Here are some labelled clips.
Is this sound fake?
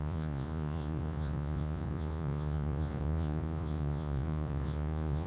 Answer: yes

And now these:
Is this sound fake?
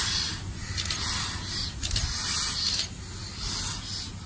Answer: no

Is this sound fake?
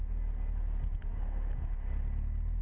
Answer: no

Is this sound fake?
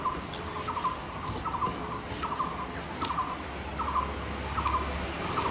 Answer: no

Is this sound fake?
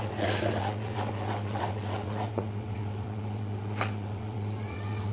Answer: yes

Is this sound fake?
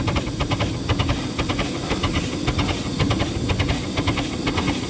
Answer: no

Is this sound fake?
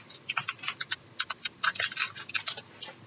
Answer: no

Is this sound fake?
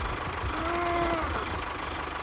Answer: no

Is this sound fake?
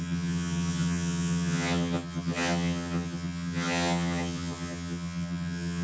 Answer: yes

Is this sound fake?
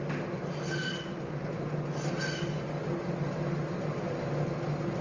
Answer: no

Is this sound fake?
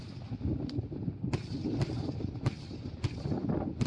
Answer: no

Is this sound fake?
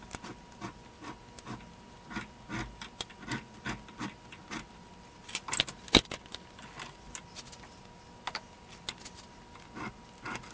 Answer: no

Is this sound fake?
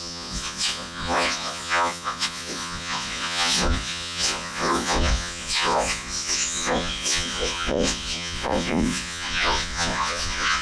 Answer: yes